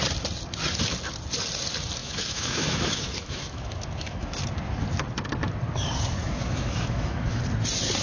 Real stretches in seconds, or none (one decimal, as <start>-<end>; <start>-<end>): 0.0-2.0; 4.4-6.2; 7.4-8.0